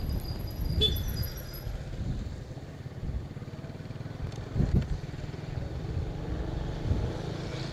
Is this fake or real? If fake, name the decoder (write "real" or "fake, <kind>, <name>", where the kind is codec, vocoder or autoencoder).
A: real